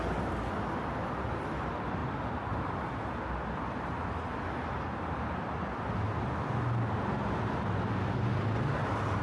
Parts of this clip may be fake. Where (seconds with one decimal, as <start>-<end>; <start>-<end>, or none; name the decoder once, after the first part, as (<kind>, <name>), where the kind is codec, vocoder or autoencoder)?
none